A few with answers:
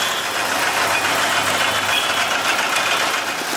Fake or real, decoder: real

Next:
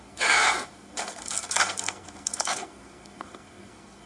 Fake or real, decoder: fake, codec, SNAC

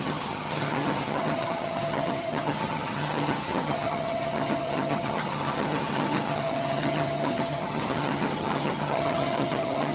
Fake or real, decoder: fake, vocoder, HiFi-GAN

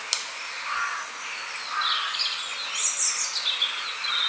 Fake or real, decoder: real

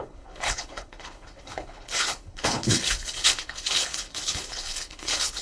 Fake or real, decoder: fake, codec, HILCodec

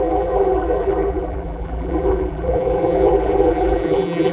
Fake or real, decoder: fake, vocoder, BigVGAN v2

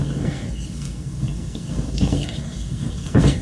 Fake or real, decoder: fake, codec, SNAC